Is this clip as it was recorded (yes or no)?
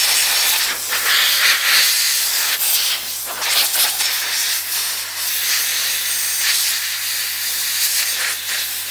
yes